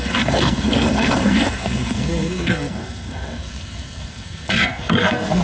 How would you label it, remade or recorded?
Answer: remade